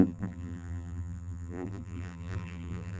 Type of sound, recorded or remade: remade